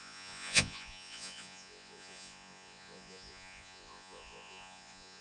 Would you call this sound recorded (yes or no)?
no